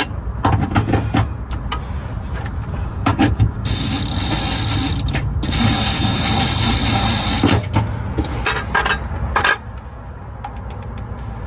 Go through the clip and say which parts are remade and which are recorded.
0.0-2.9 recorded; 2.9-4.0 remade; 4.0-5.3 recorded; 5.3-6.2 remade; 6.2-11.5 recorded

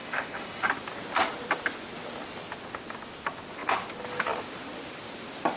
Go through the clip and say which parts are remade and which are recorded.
0.0-0.7 remade; 0.7-5.6 recorded

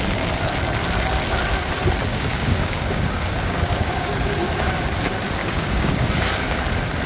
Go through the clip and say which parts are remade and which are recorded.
0.0-2.1 recorded; 2.1-4.7 remade; 4.7-5.4 recorded; 5.4-6.6 remade; 6.6-7.1 recorded

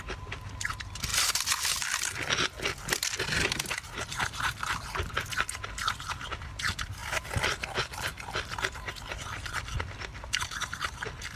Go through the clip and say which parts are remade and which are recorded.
0.0-11.4 recorded